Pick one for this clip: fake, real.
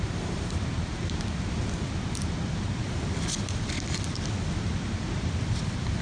real